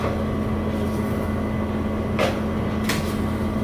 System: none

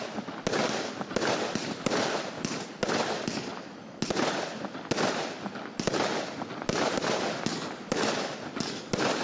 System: none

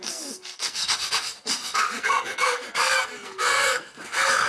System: codec, SNAC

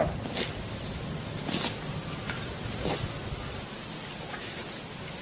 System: none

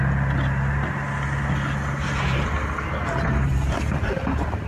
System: none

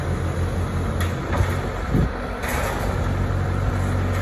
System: none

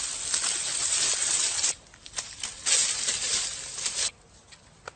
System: none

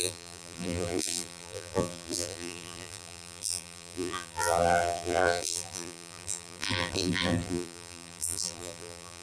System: vocoder, BigVGAN v2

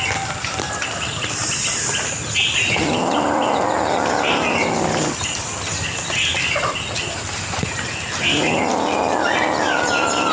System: none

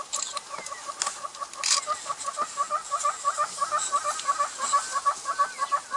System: none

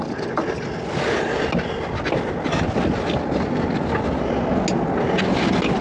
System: none